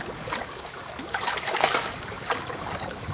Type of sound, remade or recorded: remade